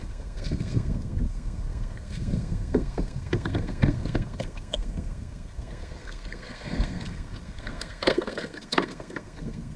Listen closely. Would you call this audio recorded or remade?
remade